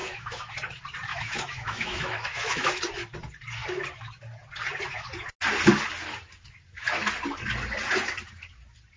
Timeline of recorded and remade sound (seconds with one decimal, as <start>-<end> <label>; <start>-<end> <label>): 0.0-0.5 remade; 0.5-1.1 recorded; 1.1-2.8 remade; 2.8-9.0 recorded